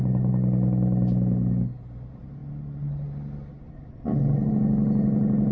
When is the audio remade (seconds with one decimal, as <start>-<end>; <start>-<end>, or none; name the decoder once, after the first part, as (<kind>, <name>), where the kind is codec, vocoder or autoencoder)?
none